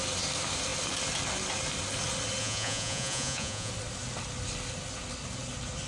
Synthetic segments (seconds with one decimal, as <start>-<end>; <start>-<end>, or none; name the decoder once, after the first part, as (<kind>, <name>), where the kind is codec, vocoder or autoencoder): 2.4-3.7 (vocoder, Vocos)